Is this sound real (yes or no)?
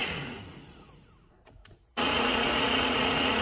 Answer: no